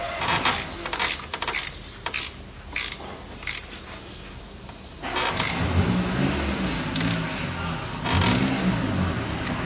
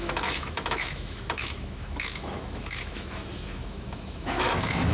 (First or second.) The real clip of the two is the first